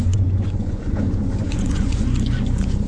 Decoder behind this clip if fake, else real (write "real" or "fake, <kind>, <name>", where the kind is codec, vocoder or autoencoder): fake, vocoder, Vocos